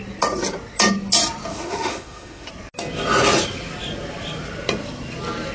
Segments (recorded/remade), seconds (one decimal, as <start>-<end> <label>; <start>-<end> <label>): 0.0-1.5 recorded; 1.5-2.5 remade; 2.5-5.5 recorded